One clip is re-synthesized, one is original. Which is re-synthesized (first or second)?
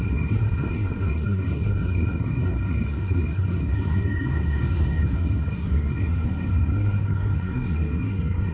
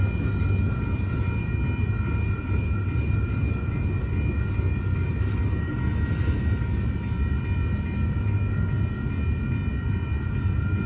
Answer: first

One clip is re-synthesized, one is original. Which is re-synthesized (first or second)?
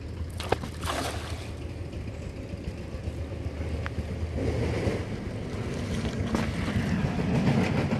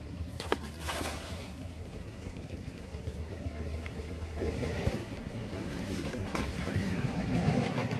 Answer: second